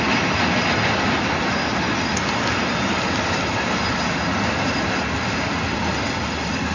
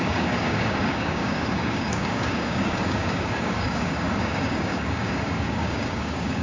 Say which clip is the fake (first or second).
second